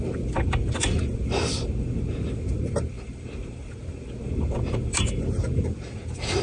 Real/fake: fake